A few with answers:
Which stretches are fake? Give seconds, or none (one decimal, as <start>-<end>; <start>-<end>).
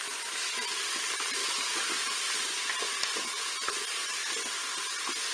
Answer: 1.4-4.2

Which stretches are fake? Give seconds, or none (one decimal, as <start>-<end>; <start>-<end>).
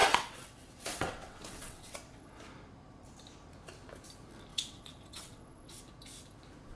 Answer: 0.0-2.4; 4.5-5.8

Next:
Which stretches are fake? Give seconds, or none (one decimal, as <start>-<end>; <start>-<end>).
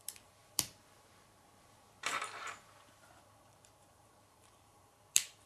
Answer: 0.0-5.5